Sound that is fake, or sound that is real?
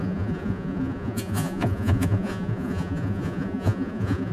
fake